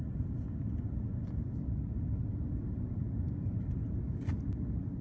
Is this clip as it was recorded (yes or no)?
yes